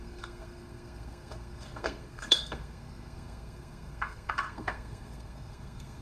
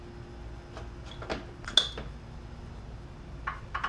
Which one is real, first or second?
second